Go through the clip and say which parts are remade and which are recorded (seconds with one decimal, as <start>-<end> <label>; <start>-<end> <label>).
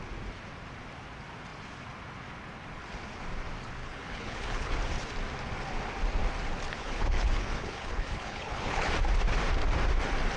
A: 0.0-3.8 recorded; 3.8-4.7 remade; 4.7-6.8 recorded; 6.8-8.9 remade; 8.9-10.4 recorded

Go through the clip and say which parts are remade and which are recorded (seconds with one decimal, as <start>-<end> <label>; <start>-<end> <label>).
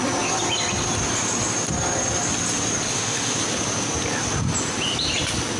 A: 0.0-2.9 recorded; 2.9-3.4 remade; 3.4-5.6 recorded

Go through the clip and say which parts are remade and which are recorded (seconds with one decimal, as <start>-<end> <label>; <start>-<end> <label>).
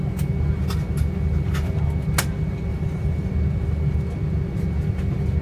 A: 0.0-2.7 recorded; 2.7-3.3 remade; 3.3-5.4 recorded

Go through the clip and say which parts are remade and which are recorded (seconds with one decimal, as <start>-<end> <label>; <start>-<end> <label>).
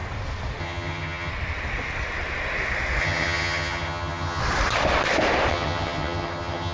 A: 0.0-0.6 recorded; 0.6-1.3 remade; 1.3-3.0 recorded; 3.0-4.4 remade; 4.4-5.5 recorded; 5.5-6.7 remade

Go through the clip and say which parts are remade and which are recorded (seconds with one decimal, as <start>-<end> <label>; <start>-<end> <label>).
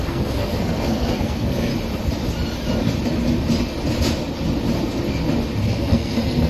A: 0.0-1.7 remade; 1.7-5.6 recorded; 5.6-6.5 remade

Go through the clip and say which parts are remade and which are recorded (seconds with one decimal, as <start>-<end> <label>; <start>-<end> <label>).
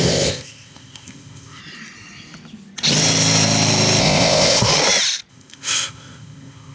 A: 0.0-1.6 remade; 1.6-4.0 recorded; 4.0-4.7 remade; 4.7-5.3 recorded; 5.3-6.7 remade